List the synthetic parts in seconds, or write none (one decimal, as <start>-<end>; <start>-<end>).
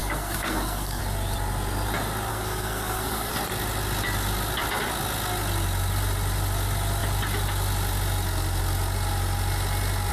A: 0.0-1.0; 2.3-3.3